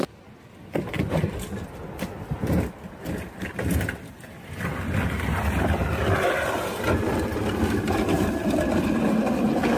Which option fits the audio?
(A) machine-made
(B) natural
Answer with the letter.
B